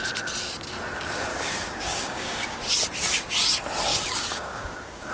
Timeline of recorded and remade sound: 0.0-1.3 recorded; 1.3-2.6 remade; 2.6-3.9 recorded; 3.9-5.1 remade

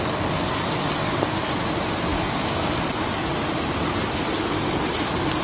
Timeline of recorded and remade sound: 0.0-2.1 recorded; 2.1-2.7 remade; 2.7-5.4 recorded

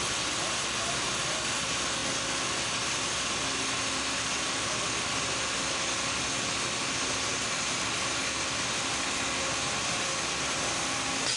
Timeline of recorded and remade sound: 0.0-11.4 recorded

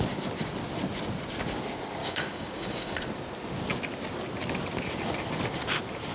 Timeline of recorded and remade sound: 0.0-2.0 recorded; 2.0-2.9 remade; 2.9-6.1 recorded

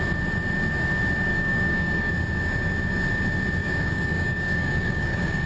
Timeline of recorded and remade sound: 0.0-1.3 recorded; 1.3-2.1 remade; 2.1-3.6 recorded; 3.6-5.5 remade